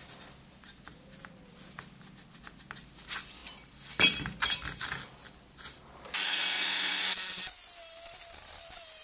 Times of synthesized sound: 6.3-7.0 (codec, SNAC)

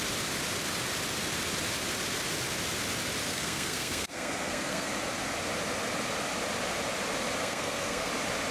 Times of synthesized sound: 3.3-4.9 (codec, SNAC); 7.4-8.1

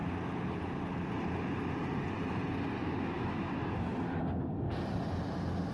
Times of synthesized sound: 2.8-3.5 (autoencoder, DAC-VAE)

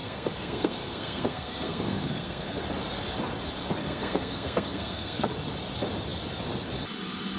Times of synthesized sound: 0.0-2.6 (codec, SNAC); 3.8-5.3